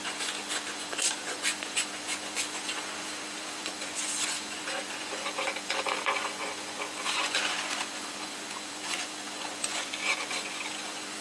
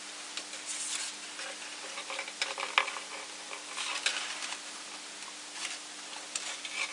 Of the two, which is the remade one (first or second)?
first